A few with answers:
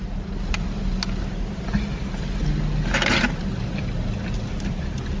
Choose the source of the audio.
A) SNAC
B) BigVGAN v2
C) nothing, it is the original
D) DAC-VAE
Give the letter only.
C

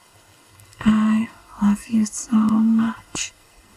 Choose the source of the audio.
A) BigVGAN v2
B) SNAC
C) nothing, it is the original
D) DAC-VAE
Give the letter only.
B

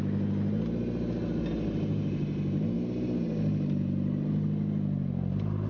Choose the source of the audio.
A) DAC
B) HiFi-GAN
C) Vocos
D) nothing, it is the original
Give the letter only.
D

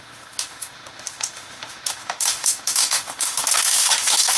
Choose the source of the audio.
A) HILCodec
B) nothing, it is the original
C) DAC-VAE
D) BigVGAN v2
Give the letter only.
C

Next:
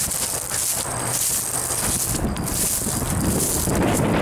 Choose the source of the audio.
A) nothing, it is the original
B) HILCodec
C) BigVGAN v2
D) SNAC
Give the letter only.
A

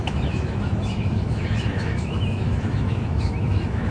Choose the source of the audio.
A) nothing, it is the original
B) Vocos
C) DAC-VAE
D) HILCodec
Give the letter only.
C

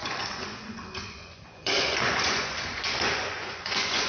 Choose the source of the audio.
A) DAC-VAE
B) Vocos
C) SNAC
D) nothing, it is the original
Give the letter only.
B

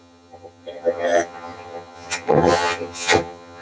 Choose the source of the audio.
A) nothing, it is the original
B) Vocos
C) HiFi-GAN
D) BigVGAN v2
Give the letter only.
C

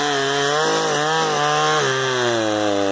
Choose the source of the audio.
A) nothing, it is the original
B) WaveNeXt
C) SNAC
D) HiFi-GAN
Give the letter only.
A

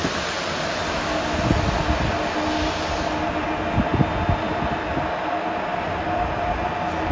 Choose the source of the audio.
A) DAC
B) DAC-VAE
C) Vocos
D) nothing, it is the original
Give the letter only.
D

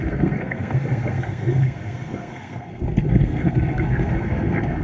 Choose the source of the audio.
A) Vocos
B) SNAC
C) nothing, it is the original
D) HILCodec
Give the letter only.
B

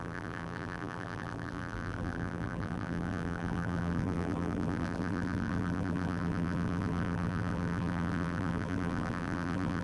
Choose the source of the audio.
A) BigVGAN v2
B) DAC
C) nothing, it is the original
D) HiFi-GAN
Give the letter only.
A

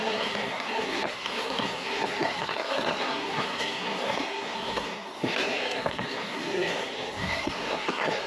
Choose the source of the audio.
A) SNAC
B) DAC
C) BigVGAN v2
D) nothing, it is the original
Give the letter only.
A